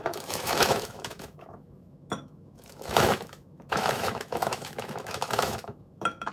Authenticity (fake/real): fake